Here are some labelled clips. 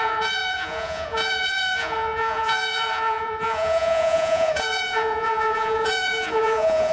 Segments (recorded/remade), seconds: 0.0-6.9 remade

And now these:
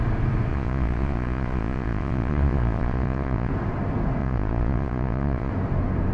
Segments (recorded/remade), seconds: 0.0-0.5 recorded; 0.5-3.5 remade; 3.5-4.2 recorded; 4.2-5.5 remade; 5.5-6.1 recorded

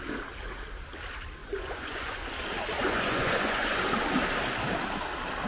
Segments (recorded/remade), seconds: 0.0-1.4 recorded; 1.4-2.3 remade; 2.3-2.8 recorded; 2.8-3.8 remade; 3.8-5.5 recorded

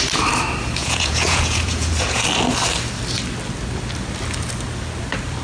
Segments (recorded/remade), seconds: 0.0-0.8 recorded; 0.8-2.2 remade; 2.2-5.4 recorded

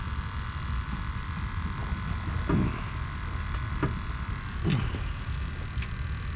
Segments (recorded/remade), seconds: 0.0-6.4 recorded